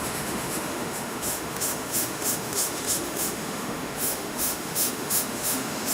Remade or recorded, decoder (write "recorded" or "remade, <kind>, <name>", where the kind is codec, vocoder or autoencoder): remade, autoencoder, DAC-VAE